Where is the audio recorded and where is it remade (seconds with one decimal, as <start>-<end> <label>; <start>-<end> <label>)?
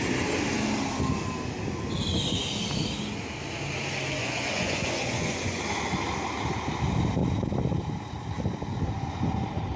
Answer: 0.0-4.2 recorded; 4.2-5.6 remade; 5.6-9.8 recorded